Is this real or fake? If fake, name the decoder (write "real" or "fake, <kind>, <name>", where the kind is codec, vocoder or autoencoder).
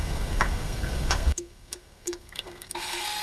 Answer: fake, codec, SNAC